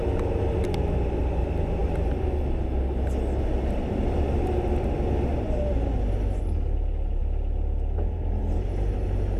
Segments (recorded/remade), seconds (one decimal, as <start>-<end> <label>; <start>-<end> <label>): 0.0-9.4 recorded